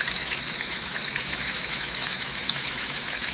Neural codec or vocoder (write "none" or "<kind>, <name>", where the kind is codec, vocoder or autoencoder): autoencoder, DAC-VAE